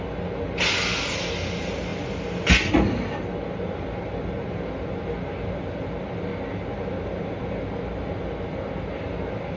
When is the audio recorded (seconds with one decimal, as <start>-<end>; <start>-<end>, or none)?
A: 0.0-9.6